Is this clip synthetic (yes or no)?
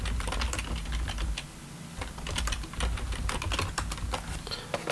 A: no